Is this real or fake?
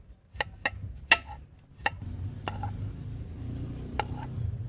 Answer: real